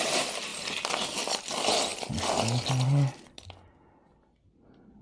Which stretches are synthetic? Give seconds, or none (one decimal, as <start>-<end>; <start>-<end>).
none